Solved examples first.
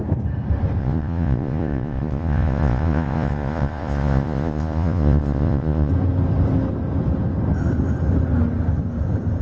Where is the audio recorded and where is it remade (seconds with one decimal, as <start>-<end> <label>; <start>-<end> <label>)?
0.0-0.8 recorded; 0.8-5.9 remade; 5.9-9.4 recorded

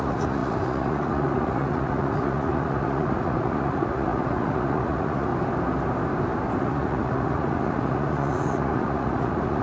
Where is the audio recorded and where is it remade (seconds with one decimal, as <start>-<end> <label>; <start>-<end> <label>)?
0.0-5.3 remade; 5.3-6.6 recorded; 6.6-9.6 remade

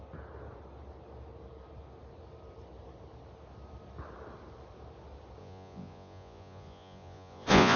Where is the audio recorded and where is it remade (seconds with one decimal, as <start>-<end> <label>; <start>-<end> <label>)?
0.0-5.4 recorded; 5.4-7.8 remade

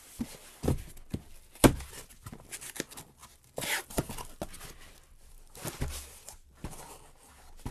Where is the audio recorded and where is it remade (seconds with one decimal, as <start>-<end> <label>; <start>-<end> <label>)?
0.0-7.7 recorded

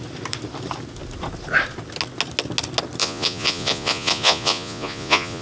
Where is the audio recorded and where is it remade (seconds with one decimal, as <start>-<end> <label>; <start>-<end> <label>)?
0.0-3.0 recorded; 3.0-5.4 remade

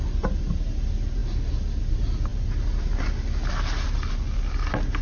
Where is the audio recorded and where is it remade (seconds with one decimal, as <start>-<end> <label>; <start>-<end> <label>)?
0.0-5.0 recorded

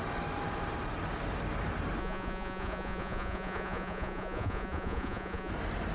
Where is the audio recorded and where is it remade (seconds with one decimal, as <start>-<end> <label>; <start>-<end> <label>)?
0.0-2.0 recorded; 2.0-5.5 remade; 5.5-5.9 recorded

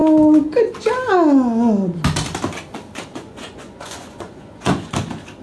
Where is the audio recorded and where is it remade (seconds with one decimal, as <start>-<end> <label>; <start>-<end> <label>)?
0.0-3.1 recorded; 3.1-4.9 remade; 4.9-5.4 recorded